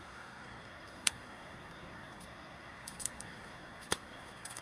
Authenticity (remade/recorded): remade